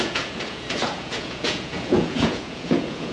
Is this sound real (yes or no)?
no